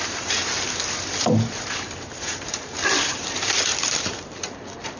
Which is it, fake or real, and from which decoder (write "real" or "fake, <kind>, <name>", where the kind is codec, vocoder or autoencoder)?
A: fake, vocoder, BigVGAN v2